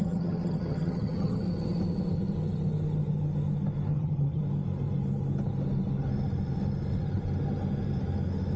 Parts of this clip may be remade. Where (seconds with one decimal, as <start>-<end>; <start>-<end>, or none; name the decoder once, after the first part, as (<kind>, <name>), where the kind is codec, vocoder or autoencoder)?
0.0-1.4 (vocoder, HiFi-GAN); 3.9-4.4